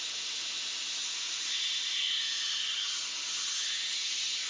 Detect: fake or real real